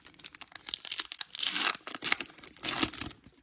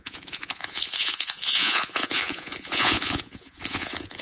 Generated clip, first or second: second